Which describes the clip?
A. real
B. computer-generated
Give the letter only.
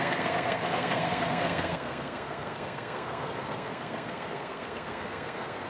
B